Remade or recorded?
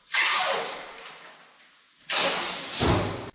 recorded